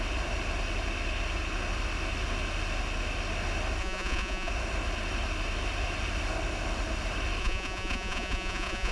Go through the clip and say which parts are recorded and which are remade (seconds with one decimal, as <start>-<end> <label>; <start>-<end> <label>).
0.0-3.8 recorded; 3.8-4.5 remade; 4.5-7.4 recorded; 7.4-8.9 remade